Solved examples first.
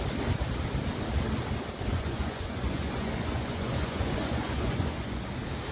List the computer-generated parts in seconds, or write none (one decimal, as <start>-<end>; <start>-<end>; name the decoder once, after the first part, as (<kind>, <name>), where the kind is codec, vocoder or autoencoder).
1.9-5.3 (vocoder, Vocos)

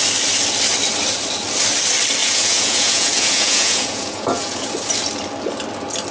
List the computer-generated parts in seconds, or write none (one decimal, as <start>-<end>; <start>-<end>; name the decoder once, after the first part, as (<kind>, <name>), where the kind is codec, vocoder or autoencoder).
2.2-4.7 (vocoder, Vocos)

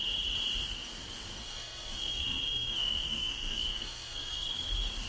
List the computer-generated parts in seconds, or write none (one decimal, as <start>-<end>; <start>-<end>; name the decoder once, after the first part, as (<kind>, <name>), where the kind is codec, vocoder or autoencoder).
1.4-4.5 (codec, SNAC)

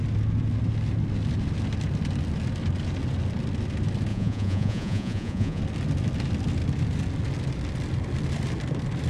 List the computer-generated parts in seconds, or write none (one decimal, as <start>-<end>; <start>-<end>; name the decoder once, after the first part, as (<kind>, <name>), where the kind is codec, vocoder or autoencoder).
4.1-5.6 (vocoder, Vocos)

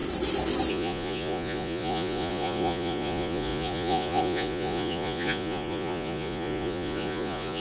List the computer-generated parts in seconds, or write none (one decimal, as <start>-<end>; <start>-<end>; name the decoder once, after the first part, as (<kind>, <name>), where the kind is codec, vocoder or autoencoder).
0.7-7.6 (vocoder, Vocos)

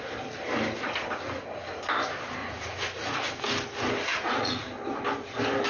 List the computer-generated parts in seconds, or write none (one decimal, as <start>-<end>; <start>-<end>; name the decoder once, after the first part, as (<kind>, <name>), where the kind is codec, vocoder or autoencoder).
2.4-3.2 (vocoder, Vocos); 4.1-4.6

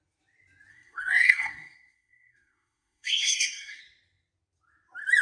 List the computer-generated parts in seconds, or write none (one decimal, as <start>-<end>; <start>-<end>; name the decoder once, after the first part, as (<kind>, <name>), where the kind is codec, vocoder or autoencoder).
0.7-3.8 (codec, SNAC)

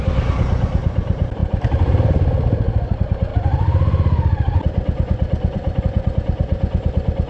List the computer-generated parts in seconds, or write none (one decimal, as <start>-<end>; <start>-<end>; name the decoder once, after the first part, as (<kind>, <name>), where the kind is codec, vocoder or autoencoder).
1.4-2.8 (vocoder, BigVGAN v2); 3.3-5.8